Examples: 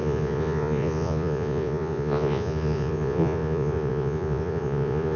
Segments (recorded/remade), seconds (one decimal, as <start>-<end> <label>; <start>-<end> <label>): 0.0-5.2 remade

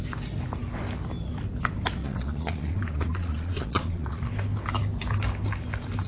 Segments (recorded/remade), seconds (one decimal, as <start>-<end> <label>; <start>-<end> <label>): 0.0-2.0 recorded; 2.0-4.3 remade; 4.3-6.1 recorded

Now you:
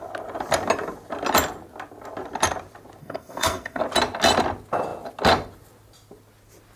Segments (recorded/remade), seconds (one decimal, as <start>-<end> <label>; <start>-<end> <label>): 0.0-3.0 recorded; 3.0-3.8 remade; 3.8-6.8 recorded

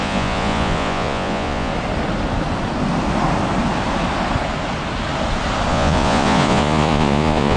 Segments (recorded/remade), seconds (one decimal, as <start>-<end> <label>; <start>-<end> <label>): 0.0-1.7 remade; 1.7-5.7 recorded; 5.7-7.6 remade